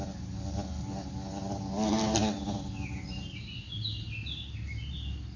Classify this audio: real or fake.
real